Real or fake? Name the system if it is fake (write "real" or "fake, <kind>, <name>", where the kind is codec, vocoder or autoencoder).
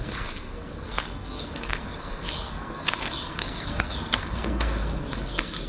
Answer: fake, codec, SNAC